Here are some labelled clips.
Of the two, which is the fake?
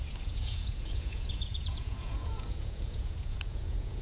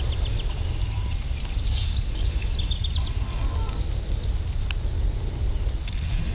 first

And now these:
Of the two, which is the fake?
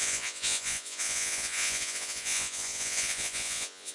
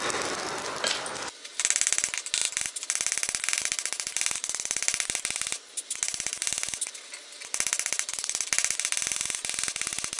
first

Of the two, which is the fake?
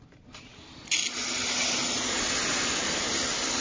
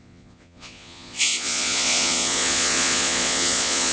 second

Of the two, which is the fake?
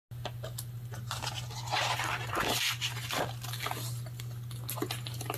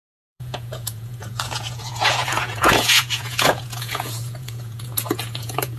second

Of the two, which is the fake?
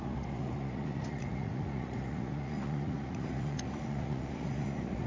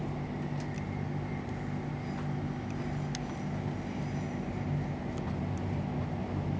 first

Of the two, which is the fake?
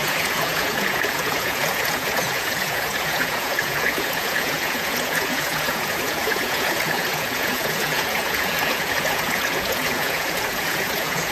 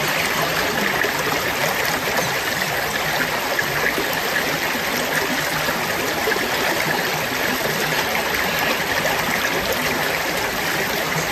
first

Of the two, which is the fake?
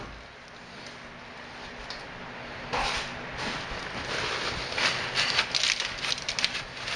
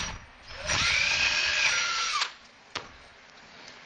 second